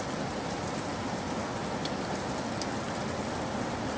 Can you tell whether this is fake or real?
real